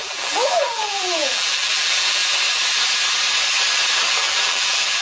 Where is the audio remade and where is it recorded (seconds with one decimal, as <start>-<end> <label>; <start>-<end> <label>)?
0.0-2.2 remade; 2.2-4.1 recorded; 4.1-5.0 remade